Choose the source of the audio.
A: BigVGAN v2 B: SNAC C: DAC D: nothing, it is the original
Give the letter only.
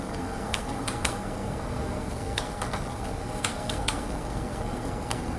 B